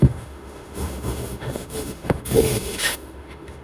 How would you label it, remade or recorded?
remade